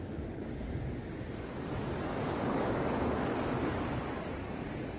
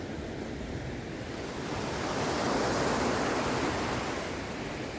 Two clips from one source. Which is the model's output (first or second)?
first